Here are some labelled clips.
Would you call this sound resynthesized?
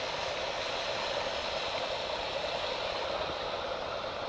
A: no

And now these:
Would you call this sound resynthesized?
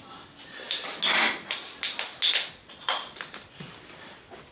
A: no